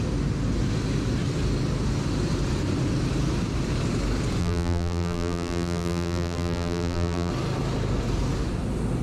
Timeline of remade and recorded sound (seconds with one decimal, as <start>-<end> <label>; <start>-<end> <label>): 0.0-4.4 recorded; 4.4-7.3 remade; 7.3-9.0 recorded